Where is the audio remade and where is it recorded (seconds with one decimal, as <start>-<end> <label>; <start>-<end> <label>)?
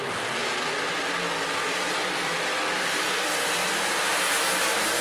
0.0-3.6 recorded; 3.6-5.0 remade